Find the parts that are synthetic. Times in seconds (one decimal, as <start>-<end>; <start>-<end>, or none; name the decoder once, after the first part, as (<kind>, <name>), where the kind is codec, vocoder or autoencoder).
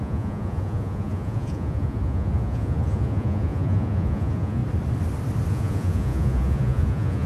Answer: 0.0-4.6 (vocoder, Vocos); 5.5-7.3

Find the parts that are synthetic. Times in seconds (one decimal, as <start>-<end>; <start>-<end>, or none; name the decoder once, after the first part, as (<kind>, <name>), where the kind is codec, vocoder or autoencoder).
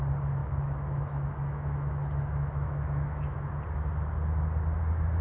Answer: 0.4-3.5 (autoencoder, DAC-VAE)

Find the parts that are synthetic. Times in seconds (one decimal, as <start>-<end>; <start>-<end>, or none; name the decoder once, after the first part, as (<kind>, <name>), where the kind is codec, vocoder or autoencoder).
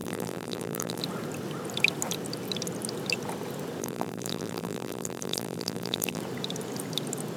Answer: 0.0-1.0 (vocoder, BigVGAN v2); 3.8-6.2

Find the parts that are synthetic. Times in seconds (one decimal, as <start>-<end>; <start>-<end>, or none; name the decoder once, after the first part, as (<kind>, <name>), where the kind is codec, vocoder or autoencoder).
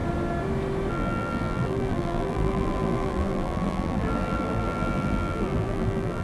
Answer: 0.9-6.2 (vocoder, BigVGAN v2)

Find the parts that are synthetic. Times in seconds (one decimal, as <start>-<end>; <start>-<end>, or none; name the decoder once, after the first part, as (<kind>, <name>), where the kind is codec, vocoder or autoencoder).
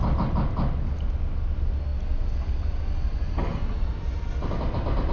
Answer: none